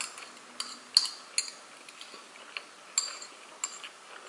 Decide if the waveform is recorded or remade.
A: recorded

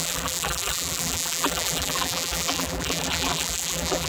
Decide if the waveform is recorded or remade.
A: remade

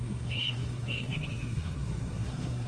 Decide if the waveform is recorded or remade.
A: remade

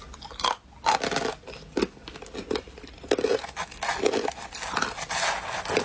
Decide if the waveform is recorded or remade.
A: recorded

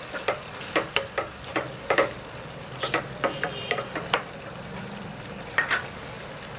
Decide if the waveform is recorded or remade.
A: remade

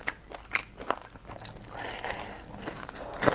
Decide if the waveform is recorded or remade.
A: recorded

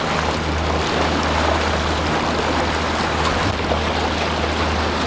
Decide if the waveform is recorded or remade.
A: recorded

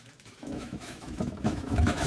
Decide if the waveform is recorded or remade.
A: remade